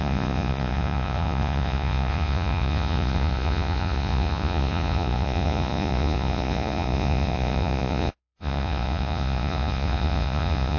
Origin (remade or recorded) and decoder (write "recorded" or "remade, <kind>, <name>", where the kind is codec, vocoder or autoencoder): remade, vocoder, Vocos